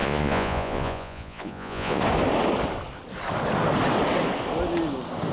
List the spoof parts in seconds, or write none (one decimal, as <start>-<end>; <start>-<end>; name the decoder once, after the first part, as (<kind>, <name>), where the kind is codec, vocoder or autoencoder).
0.0-2.0 (vocoder, Vocos)